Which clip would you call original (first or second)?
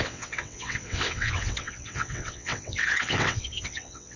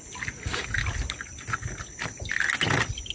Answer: second